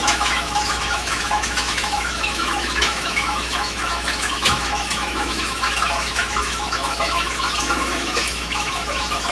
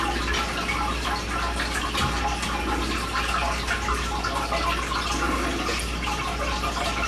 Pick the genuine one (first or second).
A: second